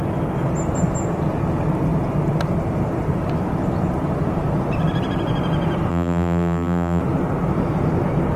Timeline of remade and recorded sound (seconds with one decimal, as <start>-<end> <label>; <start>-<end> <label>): 0.0-5.9 recorded; 5.9-7.0 remade; 7.0-8.4 recorded